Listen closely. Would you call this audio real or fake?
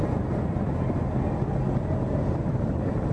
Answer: real